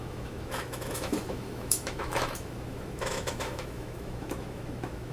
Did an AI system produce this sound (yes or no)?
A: yes